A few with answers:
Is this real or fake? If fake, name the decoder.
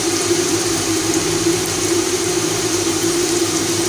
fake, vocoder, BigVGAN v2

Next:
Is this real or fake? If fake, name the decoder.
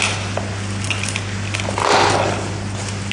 real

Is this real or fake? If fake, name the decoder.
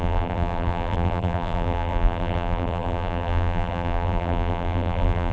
fake, vocoder, BigVGAN v2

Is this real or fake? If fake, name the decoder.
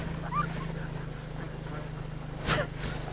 real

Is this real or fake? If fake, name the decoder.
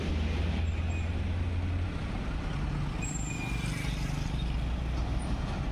real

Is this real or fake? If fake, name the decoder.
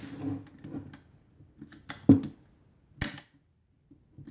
real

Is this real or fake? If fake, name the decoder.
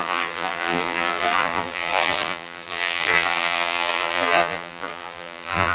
fake, vocoder, BigVGAN v2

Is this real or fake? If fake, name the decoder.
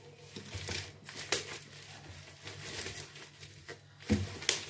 real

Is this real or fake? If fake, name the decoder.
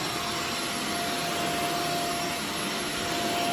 real